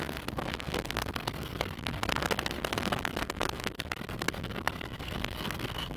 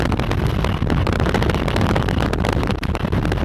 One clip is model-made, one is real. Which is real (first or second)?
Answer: second